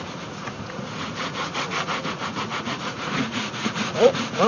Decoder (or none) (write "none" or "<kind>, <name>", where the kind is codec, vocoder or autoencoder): vocoder, Vocos